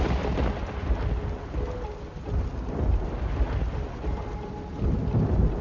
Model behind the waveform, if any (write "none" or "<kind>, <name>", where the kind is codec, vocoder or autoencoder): none